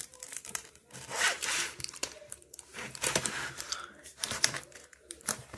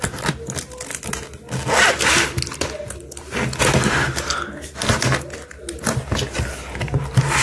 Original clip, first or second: second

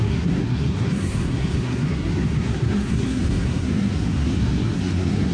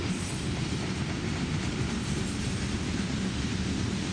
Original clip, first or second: second